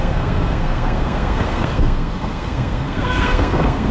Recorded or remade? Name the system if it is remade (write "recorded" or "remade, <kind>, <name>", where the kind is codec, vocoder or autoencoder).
remade, codec, SNAC